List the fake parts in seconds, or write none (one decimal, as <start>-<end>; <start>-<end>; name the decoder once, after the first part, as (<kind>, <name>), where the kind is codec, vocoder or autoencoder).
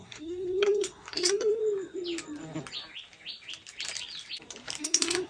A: 0.0-1.6 (codec, SNAC); 4.8-5.3